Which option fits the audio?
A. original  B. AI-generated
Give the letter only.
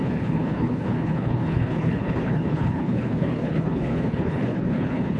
B